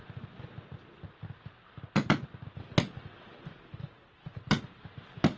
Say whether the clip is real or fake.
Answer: real